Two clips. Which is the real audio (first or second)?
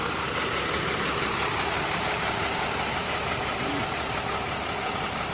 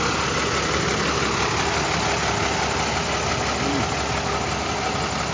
second